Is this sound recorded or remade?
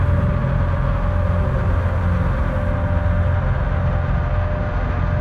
recorded